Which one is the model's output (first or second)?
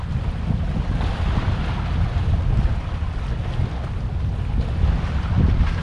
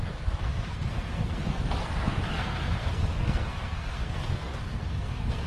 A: second